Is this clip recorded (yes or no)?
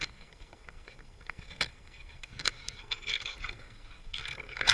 no